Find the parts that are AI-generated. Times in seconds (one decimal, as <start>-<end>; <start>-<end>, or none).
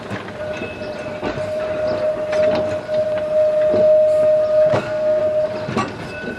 4.7-5.2